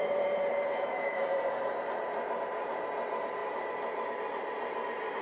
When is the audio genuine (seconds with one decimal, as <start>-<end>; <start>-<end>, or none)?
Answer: none